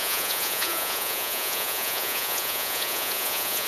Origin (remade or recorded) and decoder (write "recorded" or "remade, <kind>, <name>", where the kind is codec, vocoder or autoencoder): remade, vocoder, Vocos